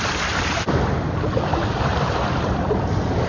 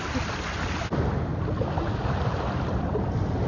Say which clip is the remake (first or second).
first